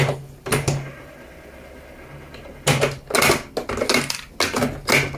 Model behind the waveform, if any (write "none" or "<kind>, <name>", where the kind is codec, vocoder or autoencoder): none